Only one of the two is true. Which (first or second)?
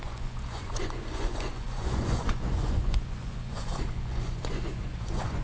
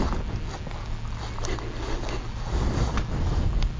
second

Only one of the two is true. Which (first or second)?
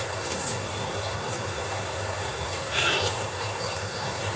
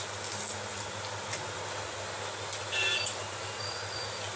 second